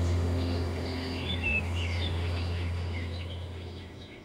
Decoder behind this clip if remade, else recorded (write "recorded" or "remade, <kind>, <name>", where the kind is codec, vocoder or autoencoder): remade, autoencoder, DAC-VAE